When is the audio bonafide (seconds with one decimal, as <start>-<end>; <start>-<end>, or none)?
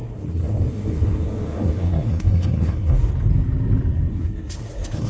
3.1-4.1